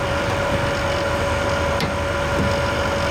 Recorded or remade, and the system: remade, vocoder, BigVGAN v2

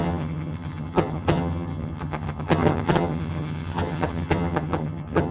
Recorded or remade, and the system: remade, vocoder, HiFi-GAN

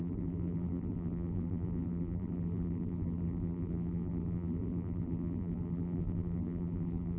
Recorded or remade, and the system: remade, vocoder, BigVGAN v2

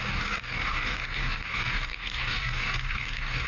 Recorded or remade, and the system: remade, codec, DAC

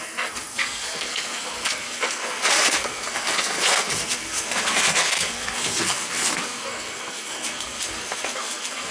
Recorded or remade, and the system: remade, codec, SNAC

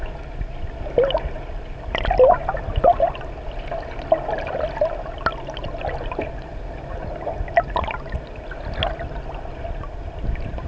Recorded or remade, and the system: recorded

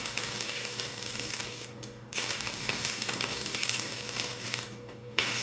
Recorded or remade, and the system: remade, codec, DAC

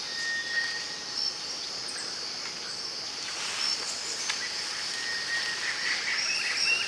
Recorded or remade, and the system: recorded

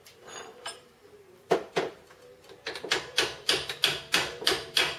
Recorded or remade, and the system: remade, vocoder, BigVGAN v2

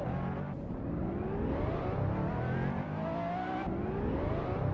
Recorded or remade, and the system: recorded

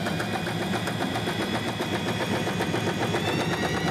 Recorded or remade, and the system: recorded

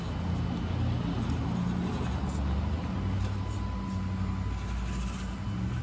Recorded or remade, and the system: recorded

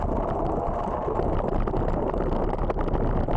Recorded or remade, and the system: recorded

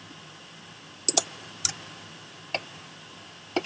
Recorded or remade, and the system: recorded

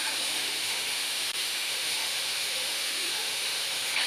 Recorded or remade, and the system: remade, autoencoder, DAC-VAE